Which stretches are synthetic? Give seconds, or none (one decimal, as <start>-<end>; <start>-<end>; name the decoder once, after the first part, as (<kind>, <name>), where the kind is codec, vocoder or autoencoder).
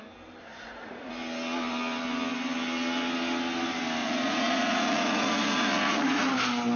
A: 0.5-1.1 (vocoder, Vocos); 4.0-6.3